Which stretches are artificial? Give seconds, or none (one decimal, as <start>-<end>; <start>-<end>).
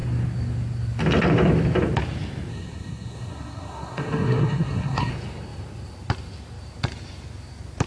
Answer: 2.5-5.1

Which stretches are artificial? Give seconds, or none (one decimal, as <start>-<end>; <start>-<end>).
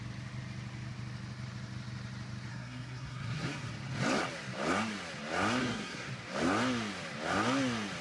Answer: 2.5-3.7; 5.6-6.1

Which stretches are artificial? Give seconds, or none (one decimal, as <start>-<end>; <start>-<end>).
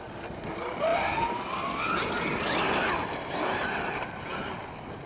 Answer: none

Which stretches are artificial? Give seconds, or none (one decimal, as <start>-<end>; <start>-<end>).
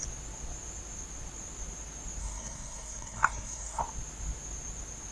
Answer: 2.2-3.8